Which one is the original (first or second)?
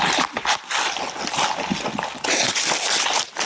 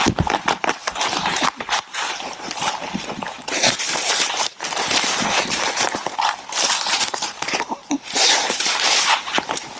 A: first